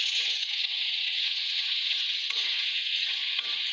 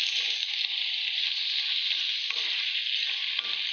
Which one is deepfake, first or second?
first